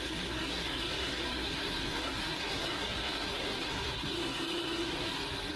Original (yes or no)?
no